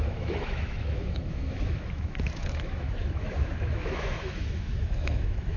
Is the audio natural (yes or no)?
no